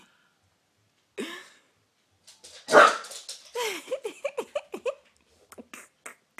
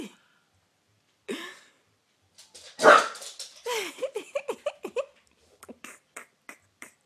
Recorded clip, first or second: first